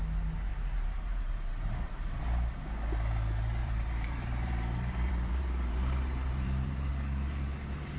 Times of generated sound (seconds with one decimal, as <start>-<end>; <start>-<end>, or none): 0.5-2.2; 3.6-6.9